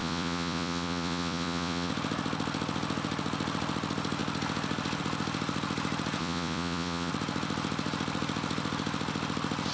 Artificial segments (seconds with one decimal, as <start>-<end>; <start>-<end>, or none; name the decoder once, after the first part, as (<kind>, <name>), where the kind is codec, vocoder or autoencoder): 0.0-1.9 (vocoder, Vocos); 6.2-7.1